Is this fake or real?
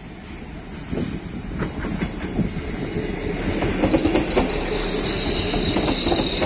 real